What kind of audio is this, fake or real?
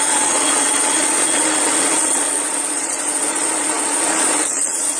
fake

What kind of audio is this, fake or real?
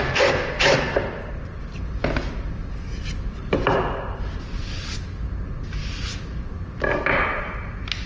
real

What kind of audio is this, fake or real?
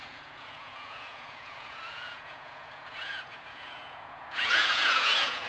fake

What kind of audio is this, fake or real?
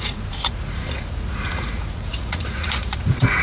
fake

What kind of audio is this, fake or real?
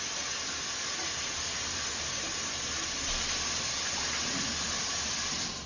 real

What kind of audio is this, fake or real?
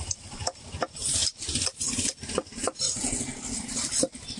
real